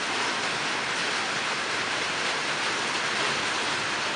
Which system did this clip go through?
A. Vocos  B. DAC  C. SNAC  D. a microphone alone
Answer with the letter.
D